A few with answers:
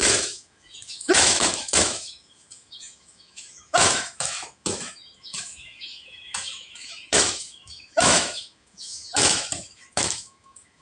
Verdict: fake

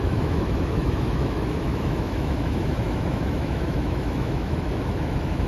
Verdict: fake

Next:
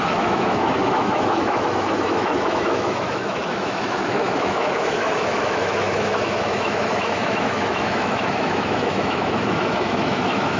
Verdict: fake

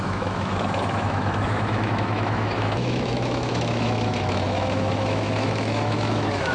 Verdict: fake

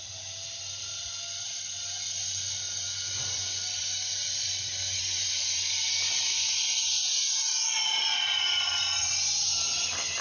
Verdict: real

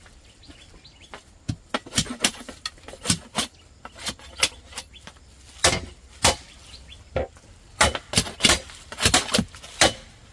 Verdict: real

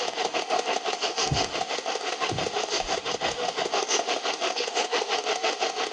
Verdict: fake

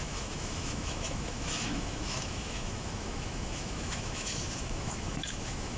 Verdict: fake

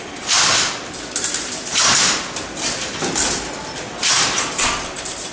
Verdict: real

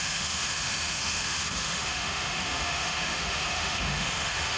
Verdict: fake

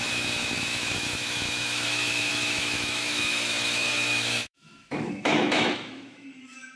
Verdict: fake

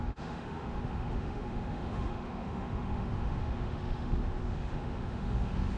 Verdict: fake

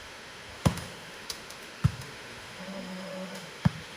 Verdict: fake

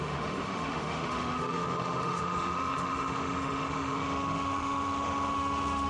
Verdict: fake